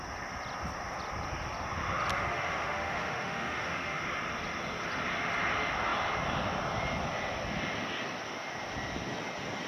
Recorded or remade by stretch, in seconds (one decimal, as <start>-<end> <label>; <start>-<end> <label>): 0.0-2.1 recorded; 2.1-4.0 remade; 4.0-9.7 recorded